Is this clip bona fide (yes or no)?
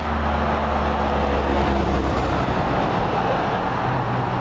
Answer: yes